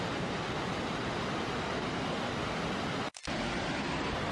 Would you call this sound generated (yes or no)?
no